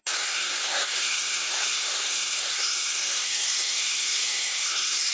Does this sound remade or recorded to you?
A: remade